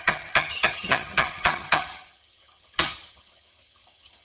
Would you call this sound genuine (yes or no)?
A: no